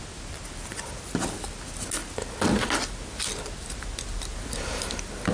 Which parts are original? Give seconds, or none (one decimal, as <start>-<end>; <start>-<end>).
0.0-5.3